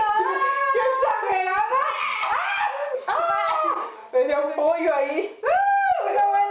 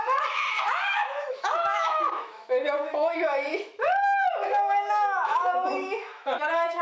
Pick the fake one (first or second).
second